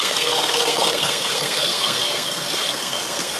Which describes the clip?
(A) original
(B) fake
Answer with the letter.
B